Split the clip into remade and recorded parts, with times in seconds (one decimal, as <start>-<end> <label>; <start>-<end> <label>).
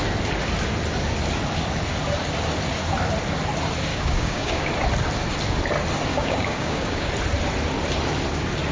0.0-3.9 recorded; 3.9-4.7 remade; 4.7-6.1 recorded; 6.1-7.1 remade; 7.1-8.7 recorded